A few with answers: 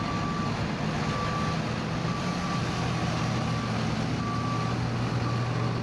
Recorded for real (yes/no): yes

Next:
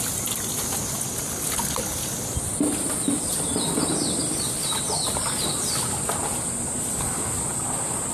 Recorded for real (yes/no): yes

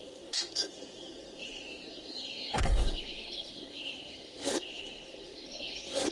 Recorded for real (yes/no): no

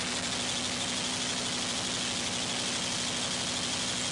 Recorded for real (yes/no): yes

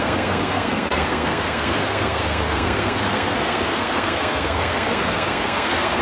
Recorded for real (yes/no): no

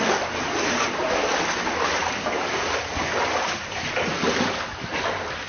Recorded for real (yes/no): yes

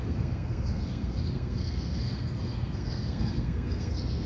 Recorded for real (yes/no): no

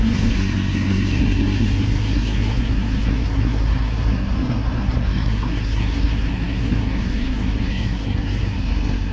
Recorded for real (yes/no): no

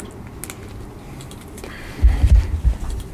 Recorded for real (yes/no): yes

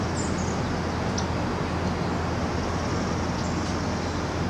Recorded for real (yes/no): yes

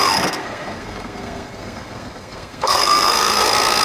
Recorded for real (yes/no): no